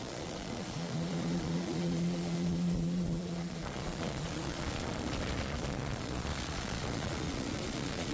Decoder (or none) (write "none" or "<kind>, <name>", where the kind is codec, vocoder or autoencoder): vocoder, Vocos